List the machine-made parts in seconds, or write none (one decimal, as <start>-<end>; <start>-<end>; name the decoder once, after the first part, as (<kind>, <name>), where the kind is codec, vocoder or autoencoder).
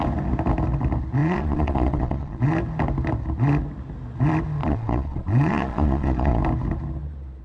1.2-2.4 (vocoder, Vocos); 4.6-6.4